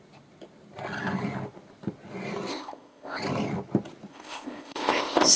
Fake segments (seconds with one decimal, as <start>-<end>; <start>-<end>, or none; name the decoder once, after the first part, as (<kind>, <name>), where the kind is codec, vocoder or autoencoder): 2.5-3.2 (codec, ZipCodec); 4.1-5.4